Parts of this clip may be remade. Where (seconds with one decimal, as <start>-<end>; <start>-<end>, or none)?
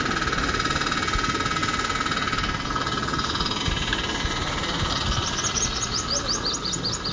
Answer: none